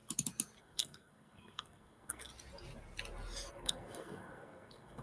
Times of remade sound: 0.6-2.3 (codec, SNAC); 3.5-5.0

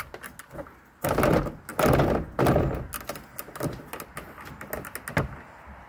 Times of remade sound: none

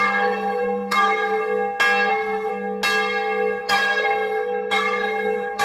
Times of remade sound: 0.0-1.4 (codec, SNAC); 2.1-2.5; 3.6-5.6